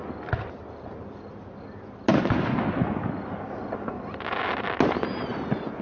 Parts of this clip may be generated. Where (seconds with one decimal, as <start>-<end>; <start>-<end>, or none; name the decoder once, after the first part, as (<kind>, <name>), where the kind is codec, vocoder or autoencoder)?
none